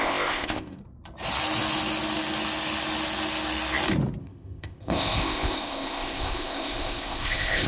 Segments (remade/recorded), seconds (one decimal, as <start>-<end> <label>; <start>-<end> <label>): 0.0-0.8 remade; 0.8-4.2 recorded; 4.2-7.7 remade